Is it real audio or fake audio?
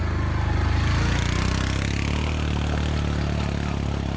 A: real